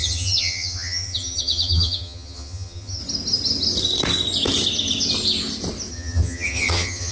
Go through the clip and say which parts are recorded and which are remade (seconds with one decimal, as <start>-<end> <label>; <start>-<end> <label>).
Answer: 0.0-3.0 remade; 3.0-5.9 recorded; 5.9-7.1 remade